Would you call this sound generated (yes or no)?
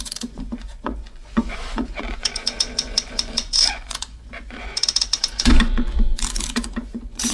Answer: yes